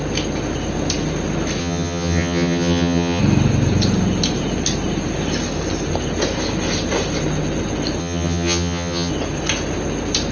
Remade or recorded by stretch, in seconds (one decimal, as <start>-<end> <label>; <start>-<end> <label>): 0.0-1.6 recorded; 1.6-3.2 remade; 3.2-8.0 recorded; 8.0-9.1 remade; 9.1-10.3 recorded